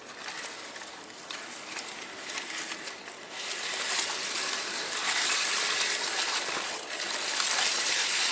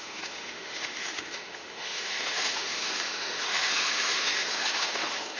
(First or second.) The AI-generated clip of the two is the second